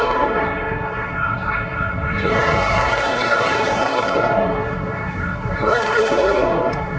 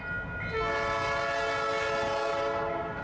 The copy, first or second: first